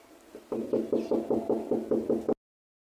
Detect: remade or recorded recorded